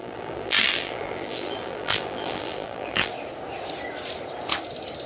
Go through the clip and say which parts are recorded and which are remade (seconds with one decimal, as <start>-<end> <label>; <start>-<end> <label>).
0.0-3.1 remade; 3.1-5.1 recorded